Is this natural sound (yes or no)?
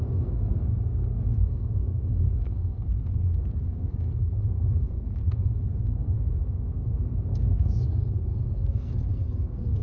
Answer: no